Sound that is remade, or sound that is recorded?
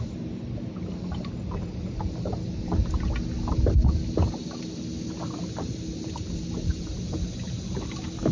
recorded